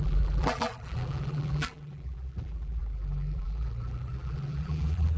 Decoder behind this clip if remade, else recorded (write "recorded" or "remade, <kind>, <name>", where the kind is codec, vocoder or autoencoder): remade, vocoder, BigVGAN v2